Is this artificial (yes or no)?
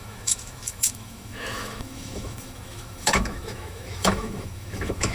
yes